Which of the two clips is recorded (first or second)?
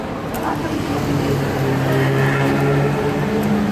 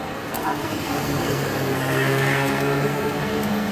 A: first